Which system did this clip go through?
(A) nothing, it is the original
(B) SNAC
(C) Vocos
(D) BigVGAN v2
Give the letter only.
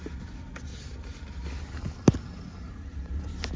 A